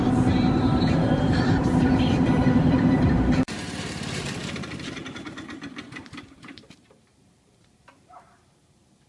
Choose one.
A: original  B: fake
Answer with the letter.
B